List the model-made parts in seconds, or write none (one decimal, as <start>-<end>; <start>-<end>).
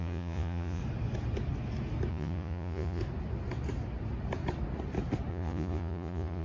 0.0-0.8; 2.1-3.0; 5.3-6.4